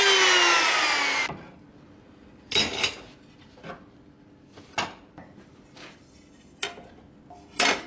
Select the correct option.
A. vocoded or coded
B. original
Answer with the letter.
B